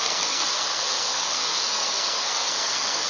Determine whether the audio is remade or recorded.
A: remade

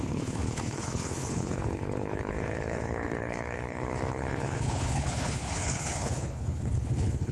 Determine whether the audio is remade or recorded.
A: remade